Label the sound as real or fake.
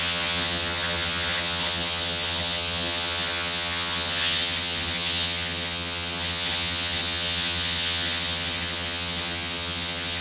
fake